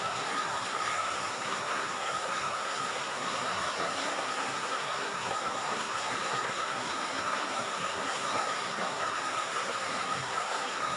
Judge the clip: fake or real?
fake